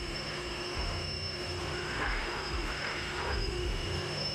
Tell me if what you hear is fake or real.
fake